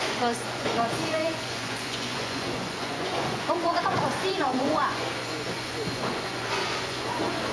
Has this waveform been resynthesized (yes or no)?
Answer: yes